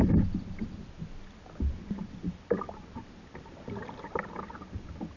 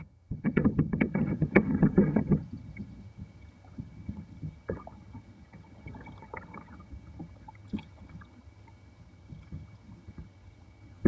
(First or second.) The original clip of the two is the first